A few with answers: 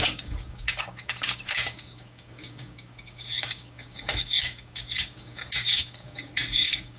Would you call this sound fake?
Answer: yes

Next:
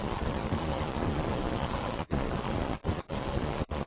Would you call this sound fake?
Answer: yes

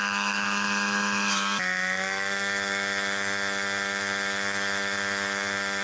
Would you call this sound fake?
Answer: yes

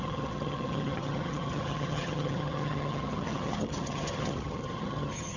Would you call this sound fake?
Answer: yes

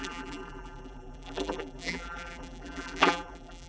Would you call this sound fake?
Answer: yes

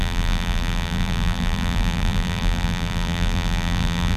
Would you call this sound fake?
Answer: yes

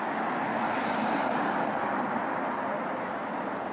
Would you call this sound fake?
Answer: no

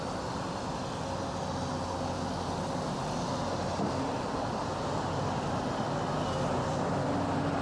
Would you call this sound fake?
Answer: no